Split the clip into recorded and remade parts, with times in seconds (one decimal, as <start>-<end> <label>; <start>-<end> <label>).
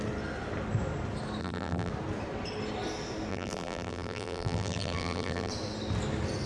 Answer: 0.0-1.4 recorded; 1.4-1.9 remade; 1.9-3.3 recorded; 3.3-5.5 remade; 5.5-6.5 recorded